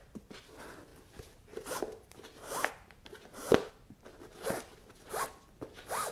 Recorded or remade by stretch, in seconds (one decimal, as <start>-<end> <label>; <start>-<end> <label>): 0.0-0.9 recorded; 0.9-3.7 remade; 3.7-6.1 recorded